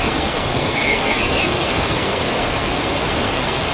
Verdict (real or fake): fake